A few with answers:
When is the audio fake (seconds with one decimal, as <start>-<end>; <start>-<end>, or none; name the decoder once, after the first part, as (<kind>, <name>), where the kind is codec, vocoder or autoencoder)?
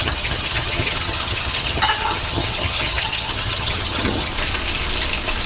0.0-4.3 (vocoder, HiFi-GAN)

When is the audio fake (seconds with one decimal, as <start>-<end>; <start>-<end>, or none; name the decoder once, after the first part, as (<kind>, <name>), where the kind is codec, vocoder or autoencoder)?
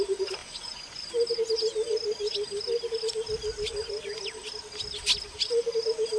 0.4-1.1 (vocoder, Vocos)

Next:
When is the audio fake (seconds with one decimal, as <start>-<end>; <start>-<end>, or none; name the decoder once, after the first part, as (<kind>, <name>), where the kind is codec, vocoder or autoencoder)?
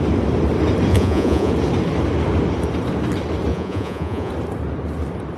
0.9-1.5 (vocoder, Vocos); 3.5-4.3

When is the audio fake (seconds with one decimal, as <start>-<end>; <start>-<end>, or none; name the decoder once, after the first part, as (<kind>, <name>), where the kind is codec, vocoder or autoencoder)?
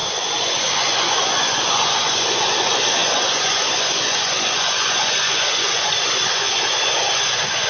0.0-7.7 (vocoder, Vocos)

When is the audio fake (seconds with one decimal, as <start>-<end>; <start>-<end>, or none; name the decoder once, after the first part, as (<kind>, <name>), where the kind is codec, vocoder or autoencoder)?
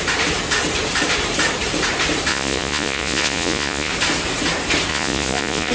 2.3-3.9 (vocoder, Vocos); 4.9-5.7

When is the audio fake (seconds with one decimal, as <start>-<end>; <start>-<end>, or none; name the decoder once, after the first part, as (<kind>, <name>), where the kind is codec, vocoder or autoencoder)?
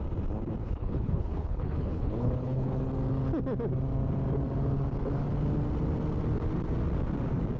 0.6-2.8 (codec, HILCodec)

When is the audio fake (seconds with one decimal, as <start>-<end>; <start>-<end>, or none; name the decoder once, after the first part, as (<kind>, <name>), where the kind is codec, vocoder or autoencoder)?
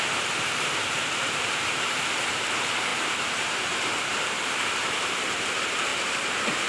0.0-6.7 (vocoder, BigVGAN v2)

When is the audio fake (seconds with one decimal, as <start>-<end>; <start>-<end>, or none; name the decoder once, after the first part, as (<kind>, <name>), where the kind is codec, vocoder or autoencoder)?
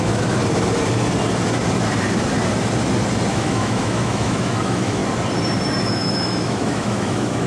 0.0-0.4 (autoencoder, DAC-VAE); 3.3-5.0; 5.8-7.5